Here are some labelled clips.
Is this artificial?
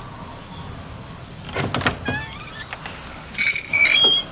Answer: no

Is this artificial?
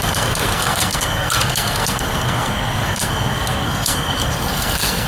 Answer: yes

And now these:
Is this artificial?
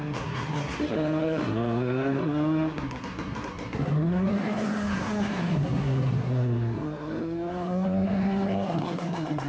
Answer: yes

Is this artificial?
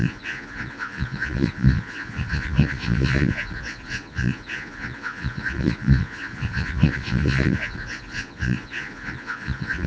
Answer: yes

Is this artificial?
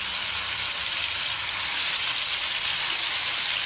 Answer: no